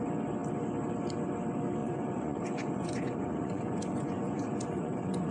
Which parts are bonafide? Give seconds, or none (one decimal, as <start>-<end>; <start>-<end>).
0.0-1.8